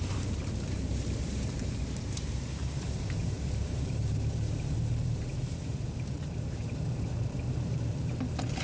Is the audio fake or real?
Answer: fake